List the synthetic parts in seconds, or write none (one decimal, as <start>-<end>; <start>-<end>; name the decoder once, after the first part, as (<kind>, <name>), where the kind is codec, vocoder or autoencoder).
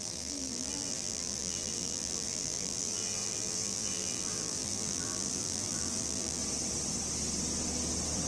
0.0-6.4 (vocoder, BigVGAN v2)